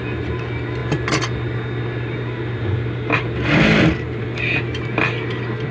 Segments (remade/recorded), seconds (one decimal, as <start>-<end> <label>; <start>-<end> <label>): 0.0-5.7 recorded